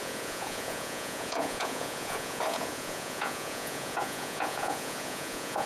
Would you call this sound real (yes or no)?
no